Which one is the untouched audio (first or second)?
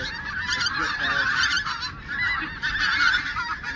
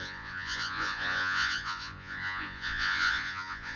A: first